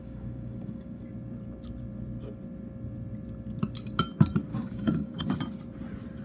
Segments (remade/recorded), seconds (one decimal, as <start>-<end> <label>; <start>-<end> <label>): 0.0-1.0 remade; 1.0-4.5 recorded; 4.5-5.2 remade; 5.2-6.2 recorded